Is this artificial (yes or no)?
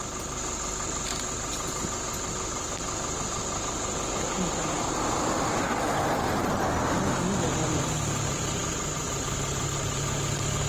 no